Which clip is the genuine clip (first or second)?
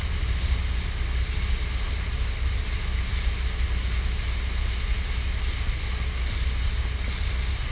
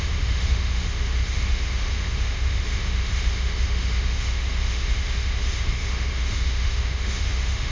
first